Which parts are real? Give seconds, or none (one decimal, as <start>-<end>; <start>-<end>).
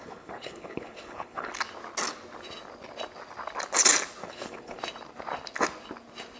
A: 1.5-4.2; 4.8-6.4